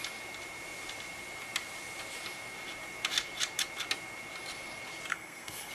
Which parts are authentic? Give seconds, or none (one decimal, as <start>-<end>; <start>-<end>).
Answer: 0.0-5.1